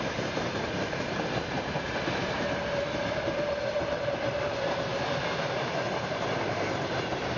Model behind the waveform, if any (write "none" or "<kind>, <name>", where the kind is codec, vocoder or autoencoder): vocoder, BigVGAN v2